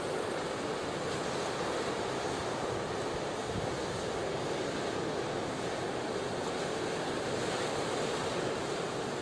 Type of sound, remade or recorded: recorded